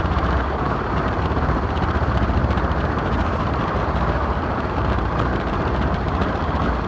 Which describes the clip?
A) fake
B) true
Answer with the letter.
A